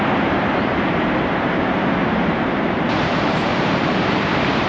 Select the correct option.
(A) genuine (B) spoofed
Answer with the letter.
B